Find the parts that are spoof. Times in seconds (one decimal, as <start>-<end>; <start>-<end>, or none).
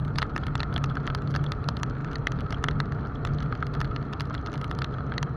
none